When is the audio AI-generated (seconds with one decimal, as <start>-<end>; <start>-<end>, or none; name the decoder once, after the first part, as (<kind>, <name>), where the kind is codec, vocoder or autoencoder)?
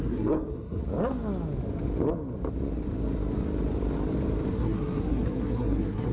0.0-0.8 (codec, SNAC); 4.5-6.1